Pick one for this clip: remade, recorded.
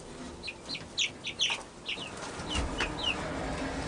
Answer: recorded